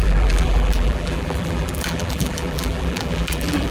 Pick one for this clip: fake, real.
fake